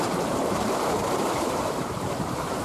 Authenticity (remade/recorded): remade